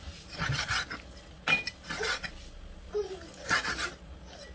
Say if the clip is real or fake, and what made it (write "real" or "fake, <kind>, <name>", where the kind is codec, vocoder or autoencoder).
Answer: real